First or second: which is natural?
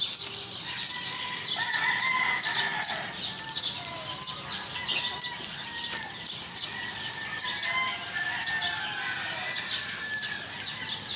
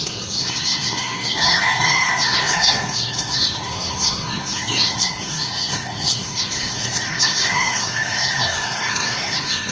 first